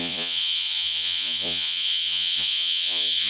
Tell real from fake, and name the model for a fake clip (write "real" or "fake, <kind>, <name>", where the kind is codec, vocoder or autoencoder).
fake, vocoder, Vocos